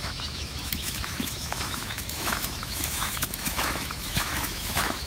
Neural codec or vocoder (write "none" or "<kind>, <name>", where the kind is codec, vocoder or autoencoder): autoencoder, DAC-VAE